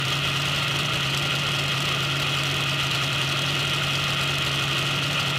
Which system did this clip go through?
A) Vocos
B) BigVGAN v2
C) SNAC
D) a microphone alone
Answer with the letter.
D